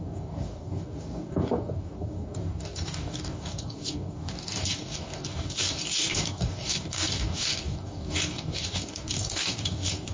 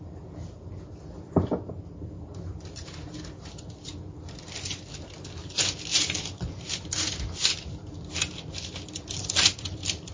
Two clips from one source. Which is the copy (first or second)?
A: first